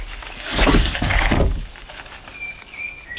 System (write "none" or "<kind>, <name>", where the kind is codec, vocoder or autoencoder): codec, DAC